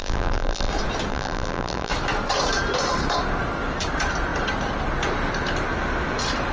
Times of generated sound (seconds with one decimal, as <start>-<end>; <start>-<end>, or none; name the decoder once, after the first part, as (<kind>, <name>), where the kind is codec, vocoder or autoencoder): 0.0-0.7 (vocoder, BigVGAN v2); 1.1-1.9